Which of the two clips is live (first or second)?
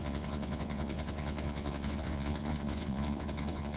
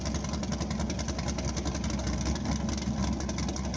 second